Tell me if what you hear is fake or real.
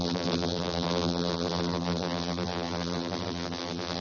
fake